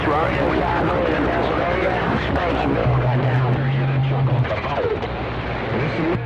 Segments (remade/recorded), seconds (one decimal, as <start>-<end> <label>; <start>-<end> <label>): 0.0-1.8 recorded; 1.8-2.4 remade; 2.4-2.8 recorded; 2.8-3.4 remade; 3.4-6.3 recorded

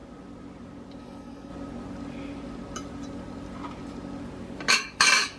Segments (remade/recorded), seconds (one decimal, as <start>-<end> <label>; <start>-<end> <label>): 0.0-1.0 recorded; 1.0-1.5 remade; 1.5-4.7 recorded; 4.7-5.4 remade